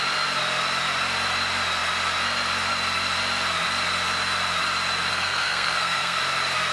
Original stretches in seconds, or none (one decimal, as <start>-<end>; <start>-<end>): 0.0-5.1; 6.2-6.7